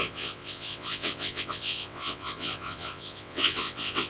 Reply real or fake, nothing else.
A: fake